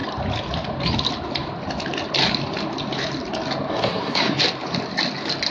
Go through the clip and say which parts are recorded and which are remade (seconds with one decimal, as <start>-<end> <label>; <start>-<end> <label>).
0.0-3.7 recorded; 3.7-4.4 remade; 4.4-5.5 recorded

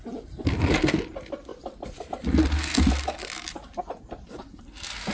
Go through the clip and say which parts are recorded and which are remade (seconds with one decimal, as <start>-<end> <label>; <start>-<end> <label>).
0.0-5.1 recorded